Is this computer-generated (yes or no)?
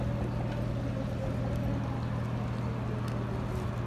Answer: no